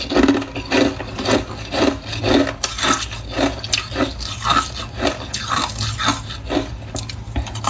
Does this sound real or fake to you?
real